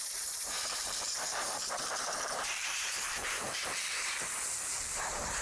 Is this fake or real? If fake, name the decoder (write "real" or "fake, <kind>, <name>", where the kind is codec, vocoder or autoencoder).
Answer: fake, vocoder, BigVGAN v2